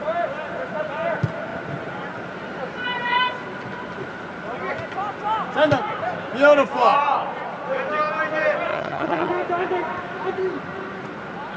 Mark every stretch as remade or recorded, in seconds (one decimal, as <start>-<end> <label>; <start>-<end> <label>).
0.0-8.7 recorded; 8.7-9.3 remade; 9.3-11.6 recorded